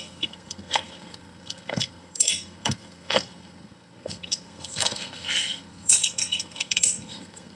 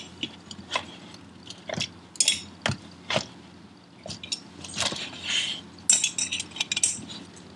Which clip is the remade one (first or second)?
first